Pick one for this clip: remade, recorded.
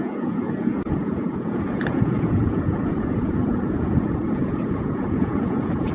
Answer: remade